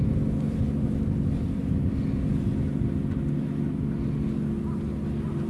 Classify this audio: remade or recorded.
recorded